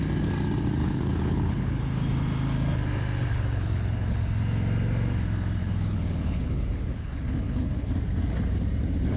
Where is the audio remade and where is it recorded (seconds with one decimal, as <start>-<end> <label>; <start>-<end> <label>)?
0.0-0.8 recorded; 0.8-1.7 remade; 1.7-3.3 recorded; 3.3-4.2 remade; 4.2-5.6 recorded; 5.6-7.9 remade; 7.9-9.2 recorded